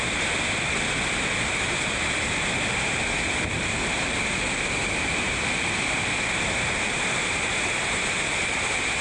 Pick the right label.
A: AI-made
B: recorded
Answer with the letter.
B